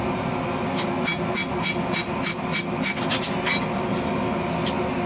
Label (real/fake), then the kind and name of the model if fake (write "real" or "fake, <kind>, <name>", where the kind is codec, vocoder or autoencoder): real